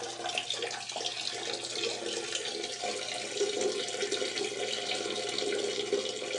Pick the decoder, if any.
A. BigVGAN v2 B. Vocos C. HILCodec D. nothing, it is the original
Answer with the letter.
D